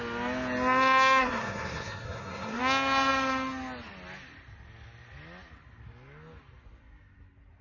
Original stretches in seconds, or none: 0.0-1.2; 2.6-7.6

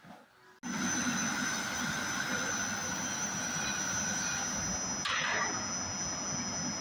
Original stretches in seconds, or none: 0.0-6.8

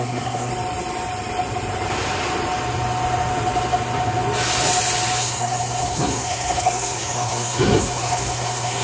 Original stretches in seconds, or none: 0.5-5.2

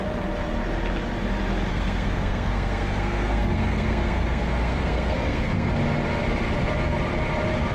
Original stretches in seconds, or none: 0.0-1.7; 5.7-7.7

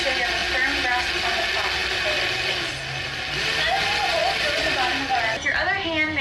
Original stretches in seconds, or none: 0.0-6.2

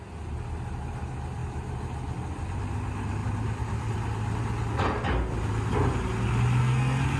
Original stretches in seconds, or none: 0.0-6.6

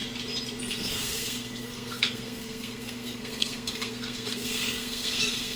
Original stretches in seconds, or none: 0.0-0.6

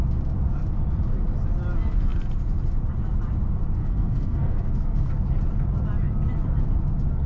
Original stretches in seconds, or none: 0.0-3.8; 5.1-7.3